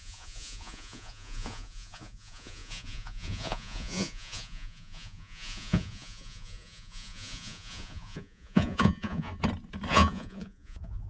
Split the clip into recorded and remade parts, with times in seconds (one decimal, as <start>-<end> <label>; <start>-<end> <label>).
0.0-9.3 remade; 9.3-9.9 recorded; 9.9-11.1 remade

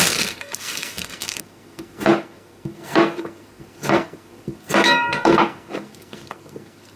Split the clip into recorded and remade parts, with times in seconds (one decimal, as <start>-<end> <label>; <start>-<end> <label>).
0.0-7.0 remade

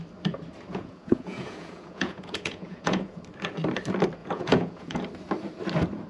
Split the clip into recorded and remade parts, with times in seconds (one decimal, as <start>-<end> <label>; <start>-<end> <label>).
0.0-0.7 recorded; 0.7-3.2 remade; 3.2-4.2 recorded; 4.2-5.0 remade; 5.0-6.1 recorded

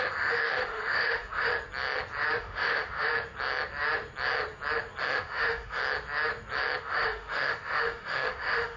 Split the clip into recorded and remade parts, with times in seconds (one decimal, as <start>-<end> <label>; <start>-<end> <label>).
0.0-1.5 remade; 1.5-2.4 recorded; 2.4-3.1 remade; 3.1-5.0 recorded; 5.0-5.8 remade; 5.8-6.8 recorded; 6.8-8.8 remade

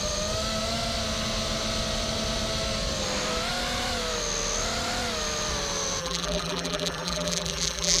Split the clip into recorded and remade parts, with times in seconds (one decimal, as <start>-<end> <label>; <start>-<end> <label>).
0.0-6.0 recorded; 6.0-8.0 remade